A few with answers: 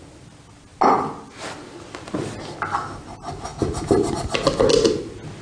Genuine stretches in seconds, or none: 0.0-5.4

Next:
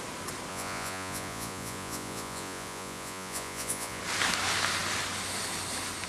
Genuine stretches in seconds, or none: 0.0-0.5; 4.0-6.1

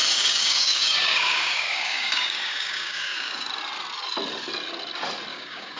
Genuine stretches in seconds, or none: 3.5-5.3

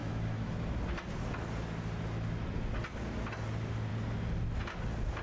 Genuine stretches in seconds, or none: 0.8-5.2